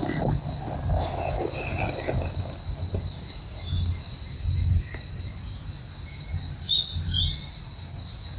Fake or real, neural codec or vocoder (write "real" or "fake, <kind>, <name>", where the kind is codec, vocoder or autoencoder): real